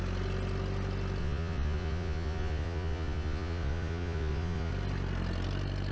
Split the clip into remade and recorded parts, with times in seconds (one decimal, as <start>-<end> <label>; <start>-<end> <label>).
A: 0.0-1.2 recorded; 1.2-4.7 remade; 4.7-5.9 recorded